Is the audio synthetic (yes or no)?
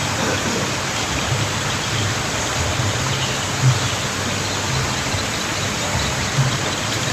no